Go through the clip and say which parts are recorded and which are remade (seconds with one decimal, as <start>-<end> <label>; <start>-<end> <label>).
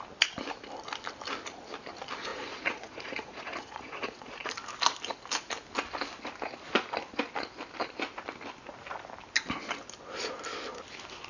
0.0-2.3 recorded; 2.3-4.5 remade; 4.5-11.3 recorded